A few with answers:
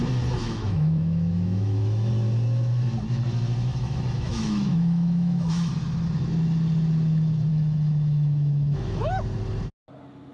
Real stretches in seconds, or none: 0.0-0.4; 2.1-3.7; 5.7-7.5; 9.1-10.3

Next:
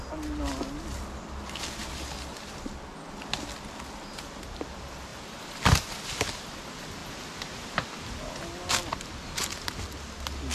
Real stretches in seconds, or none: 0.0-10.5

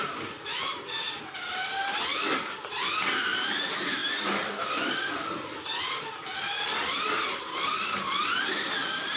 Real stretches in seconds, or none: 6.3-6.9

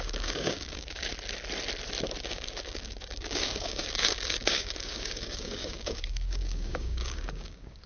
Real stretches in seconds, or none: 1.1-2.2

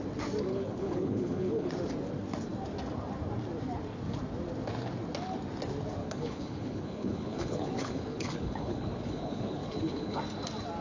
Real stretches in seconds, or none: 0.0-0.5; 1.7-6.0; 10.2-10.8